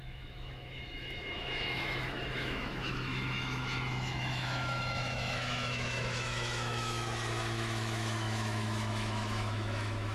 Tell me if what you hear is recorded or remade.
remade